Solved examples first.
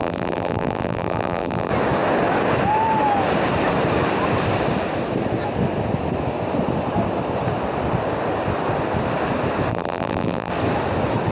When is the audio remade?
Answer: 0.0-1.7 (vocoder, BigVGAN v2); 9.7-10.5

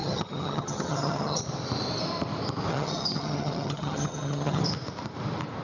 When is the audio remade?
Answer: 0.0-1.4 (vocoder, HiFi-GAN); 2.7-4.6

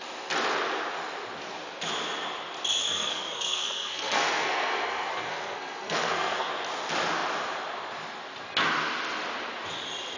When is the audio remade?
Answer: 2.8-6.5 (codec, SNAC)

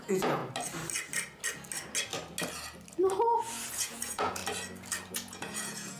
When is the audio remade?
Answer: 0.0-0.4 (vocoder, Vocos); 3.7-4.4; 5.1-6.0